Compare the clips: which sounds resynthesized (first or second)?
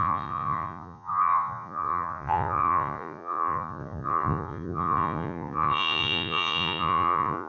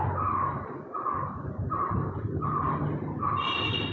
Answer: first